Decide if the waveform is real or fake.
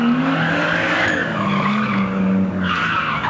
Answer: fake